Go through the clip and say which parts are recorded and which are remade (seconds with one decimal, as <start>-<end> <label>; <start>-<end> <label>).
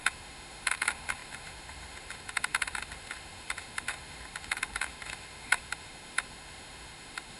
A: 0.0-7.4 remade